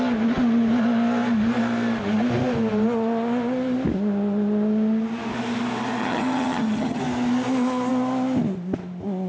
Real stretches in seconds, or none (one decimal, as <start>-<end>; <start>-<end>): 0.0-6.0; 7.0-9.3